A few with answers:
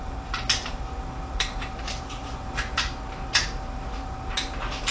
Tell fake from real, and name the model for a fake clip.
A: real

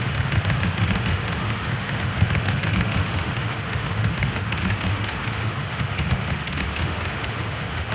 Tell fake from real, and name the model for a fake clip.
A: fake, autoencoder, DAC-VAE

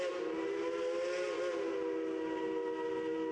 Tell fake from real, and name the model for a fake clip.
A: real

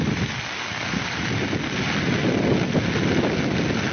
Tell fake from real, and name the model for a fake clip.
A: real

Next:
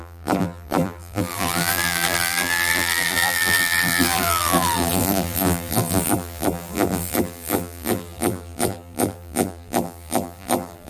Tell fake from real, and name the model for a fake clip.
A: fake, vocoder, BigVGAN v2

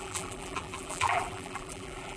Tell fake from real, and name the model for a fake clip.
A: fake, vocoder, BigVGAN v2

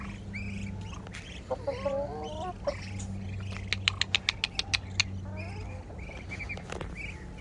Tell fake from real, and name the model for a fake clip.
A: real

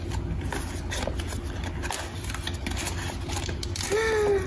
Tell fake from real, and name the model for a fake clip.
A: real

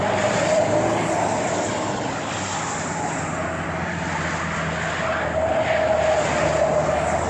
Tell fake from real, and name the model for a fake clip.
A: real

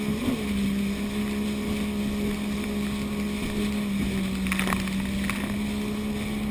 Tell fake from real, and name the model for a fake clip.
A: real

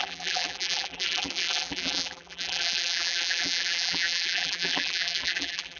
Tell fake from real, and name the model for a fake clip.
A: fake, vocoder, BigVGAN v2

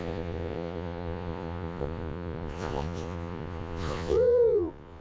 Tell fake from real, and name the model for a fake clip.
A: fake, vocoder, Vocos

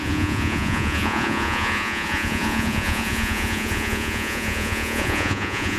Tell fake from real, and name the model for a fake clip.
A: fake, vocoder, Vocos